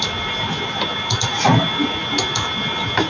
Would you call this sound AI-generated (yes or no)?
no